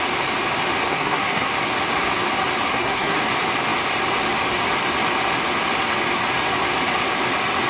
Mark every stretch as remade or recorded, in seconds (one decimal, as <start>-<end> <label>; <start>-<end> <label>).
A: 0.0-0.9 recorded; 0.9-1.5 remade; 1.5-2.7 recorded; 2.7-3.2 remade; 3.2-7.7 recorded